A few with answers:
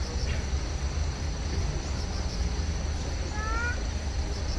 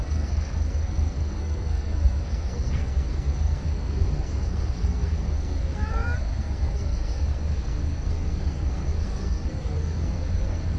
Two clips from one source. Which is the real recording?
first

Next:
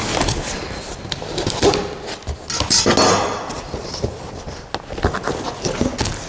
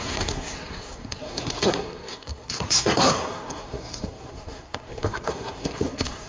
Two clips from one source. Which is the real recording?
first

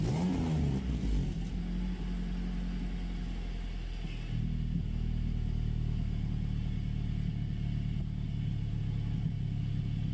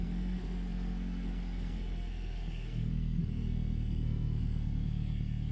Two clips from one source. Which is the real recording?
first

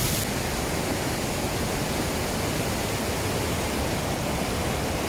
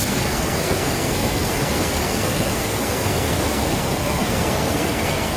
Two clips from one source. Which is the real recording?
first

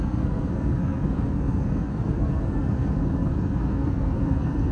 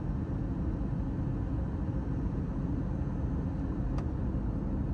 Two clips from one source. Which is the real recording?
second